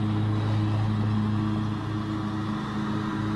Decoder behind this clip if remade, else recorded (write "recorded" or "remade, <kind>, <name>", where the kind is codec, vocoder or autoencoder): recorded